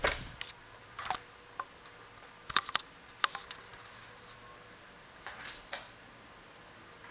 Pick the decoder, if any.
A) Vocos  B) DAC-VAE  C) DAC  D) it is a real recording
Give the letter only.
D